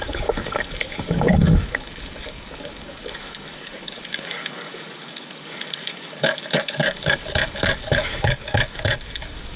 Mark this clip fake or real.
fake